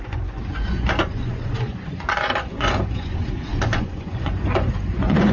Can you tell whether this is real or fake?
fake